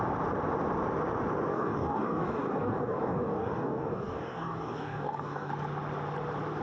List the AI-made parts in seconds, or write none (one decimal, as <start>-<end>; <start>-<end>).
1.5-5.5